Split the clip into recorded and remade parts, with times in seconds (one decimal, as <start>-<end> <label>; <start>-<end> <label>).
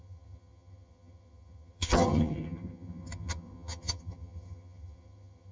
0.0-5.5 remade